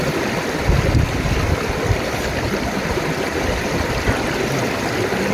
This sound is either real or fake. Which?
real